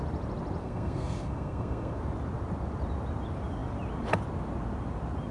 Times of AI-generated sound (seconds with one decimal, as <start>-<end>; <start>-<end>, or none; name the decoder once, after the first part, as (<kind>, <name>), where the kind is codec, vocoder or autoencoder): 0.6-2.0 (codec, SNAC)